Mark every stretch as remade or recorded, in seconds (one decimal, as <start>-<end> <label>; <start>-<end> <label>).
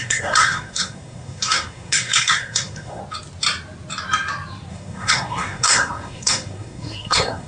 0.0-3.0 remade; 3.0-4.7 recorded; 4.7-7.5 remade